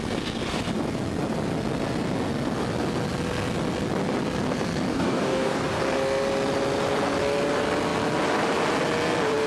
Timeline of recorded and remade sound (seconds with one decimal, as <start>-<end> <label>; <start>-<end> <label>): 0.0-4.9 recorded; 4.9-5.8 remade; 5.8-9.5 recorded